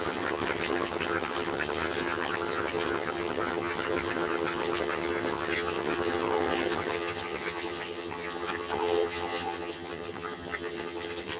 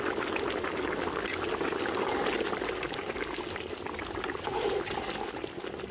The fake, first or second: first